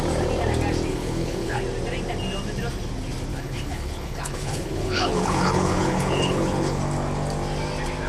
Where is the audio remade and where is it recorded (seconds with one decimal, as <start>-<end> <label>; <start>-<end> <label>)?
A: 0.0-0.9 recorded; 0.9-1.6 remade; 1.6-3.3 recorded; 3.3-6.8 remade; 6.8-8.1 recorded